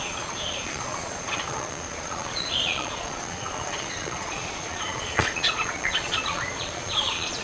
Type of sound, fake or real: fake